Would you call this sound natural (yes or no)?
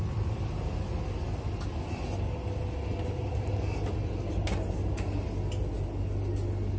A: yes